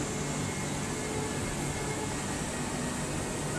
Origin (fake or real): real